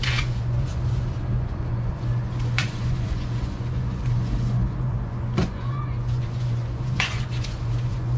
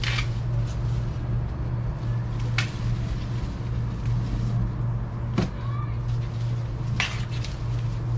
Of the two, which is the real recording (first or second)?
second